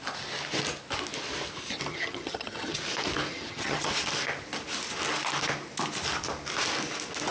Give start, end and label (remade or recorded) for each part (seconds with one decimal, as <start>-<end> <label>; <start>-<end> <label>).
0.0-1.9 recorded; 1.9-2.8 remade; 2.8-3.3 recorded; 3.3-3.9 remade; 3.9-7.3 recorded